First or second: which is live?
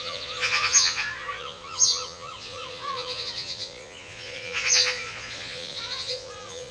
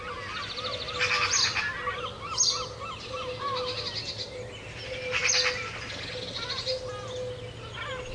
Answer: second